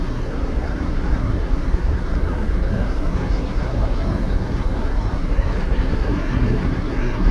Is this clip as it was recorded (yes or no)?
no